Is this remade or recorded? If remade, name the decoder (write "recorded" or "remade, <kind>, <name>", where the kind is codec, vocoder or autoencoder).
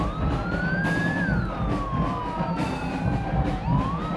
recorded